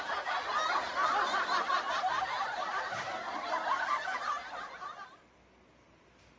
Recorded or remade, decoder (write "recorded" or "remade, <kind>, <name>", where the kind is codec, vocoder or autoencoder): recorded